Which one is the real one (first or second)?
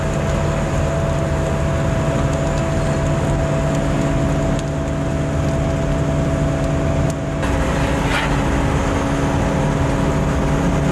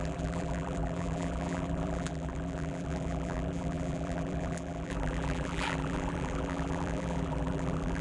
first